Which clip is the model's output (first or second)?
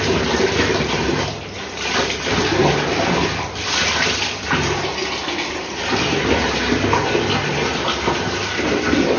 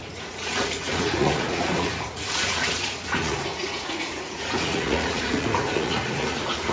second